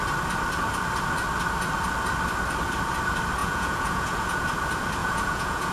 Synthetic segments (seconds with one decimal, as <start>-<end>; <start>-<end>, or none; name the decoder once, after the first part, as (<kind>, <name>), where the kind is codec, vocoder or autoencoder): 3.4-4.4 (vocoder, Vocos); 5.0-5.7